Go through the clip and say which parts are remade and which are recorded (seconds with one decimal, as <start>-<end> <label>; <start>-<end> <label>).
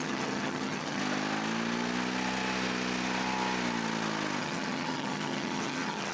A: 0.0-1.0 remade; 1.0-4.4 recorded; 4.4-6.1 remade